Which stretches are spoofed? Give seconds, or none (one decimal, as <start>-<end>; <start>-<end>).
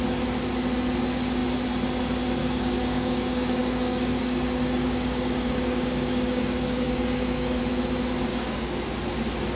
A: 2.4-7.6; 8.3-8.8